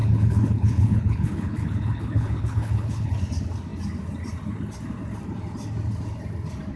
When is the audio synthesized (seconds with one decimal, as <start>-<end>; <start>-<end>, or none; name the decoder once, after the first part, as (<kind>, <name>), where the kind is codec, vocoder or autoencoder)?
0.0-3.2 (codec, HILCodec)

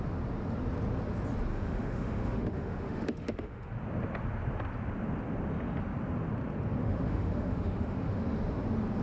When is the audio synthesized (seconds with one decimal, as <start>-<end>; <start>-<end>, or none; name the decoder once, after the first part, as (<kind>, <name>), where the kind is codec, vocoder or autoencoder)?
1.5-3.7 (autoencoder, DAC-VAE); 6.8-8.2

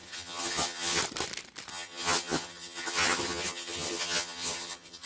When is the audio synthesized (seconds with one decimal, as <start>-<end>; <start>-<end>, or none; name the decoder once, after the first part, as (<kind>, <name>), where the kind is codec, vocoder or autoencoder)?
0.0-1.0 (vocoder, HiFi-GAN); 1.7-5.1

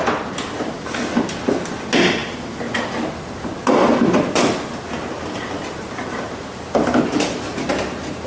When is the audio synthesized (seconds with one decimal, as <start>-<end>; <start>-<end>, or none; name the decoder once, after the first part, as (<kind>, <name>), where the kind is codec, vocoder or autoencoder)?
none

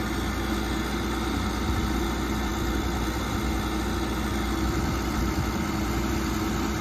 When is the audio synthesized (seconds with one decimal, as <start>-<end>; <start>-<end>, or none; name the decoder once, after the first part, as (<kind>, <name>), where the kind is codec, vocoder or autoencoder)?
4.3-5.8 (vocoder, BigVGAN v2)

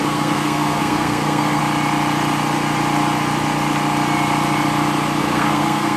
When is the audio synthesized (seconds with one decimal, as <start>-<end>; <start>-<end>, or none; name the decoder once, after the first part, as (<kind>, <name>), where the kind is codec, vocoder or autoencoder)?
0.0-1.6 (codec, SNAC); 5.2-6.0

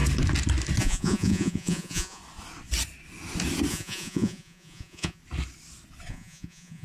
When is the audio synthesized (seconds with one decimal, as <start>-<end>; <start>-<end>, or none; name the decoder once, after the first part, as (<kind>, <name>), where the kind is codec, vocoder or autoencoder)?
0.8-2.2 (vocoder, Vocos); 3.7-5.2; 6.1-6.8

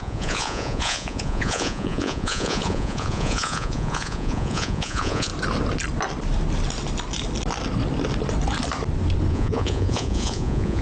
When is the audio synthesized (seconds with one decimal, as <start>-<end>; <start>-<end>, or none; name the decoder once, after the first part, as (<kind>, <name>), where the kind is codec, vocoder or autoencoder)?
0.0-5.3 (vocoder, Vocos); 9.3-10.8